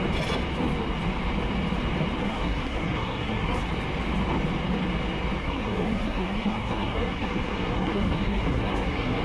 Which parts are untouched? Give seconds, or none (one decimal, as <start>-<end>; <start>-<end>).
0.0-2.2; 3.7-5.4